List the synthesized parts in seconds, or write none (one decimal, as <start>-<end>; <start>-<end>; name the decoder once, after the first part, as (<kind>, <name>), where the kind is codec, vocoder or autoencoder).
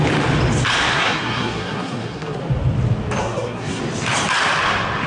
0.9-2.4 (codec, SNAC); 3.2-3.8